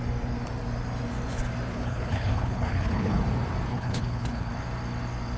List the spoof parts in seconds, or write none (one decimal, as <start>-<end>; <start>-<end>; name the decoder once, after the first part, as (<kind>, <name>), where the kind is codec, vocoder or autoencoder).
1.7-3.2 (codec, HILCodec); 3.7-4.5